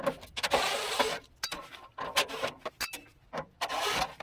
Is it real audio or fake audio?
real